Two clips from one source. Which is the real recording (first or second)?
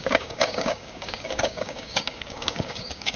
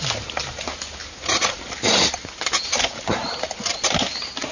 second